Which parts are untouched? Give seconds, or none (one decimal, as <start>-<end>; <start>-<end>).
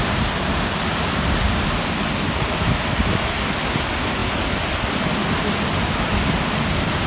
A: 0.0-7.1